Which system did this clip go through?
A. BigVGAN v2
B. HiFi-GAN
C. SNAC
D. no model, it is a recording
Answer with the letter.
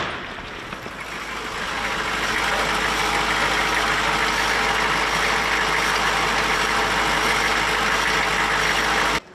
D